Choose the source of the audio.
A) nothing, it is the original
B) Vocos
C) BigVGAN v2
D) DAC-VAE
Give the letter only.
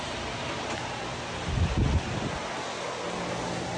A